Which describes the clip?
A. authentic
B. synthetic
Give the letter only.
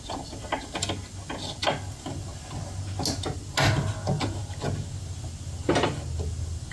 A